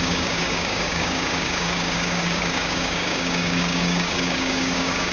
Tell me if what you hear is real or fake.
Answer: fake